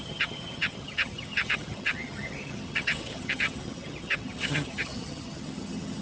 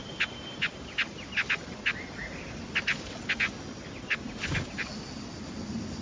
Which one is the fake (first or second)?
first